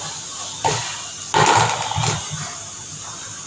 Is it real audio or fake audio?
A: real